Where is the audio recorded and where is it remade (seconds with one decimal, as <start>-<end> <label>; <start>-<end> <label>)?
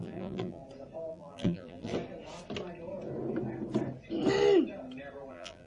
0.0-0.6 remade; 0.6-1.1 recorded; 1.1-1.9 remade; 1.9-5.3 recorded; 5.3-5.7 remade